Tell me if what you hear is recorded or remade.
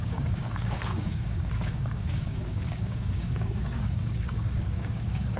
remade